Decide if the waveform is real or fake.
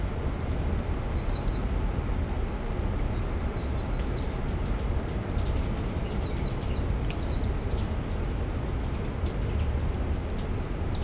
real